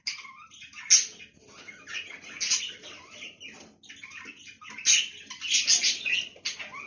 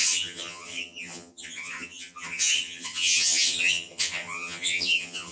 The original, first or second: first